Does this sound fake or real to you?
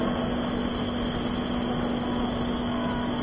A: real